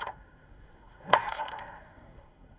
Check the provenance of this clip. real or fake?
fake